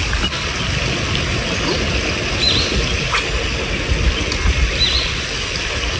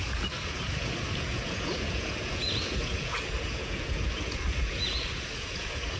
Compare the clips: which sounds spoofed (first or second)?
second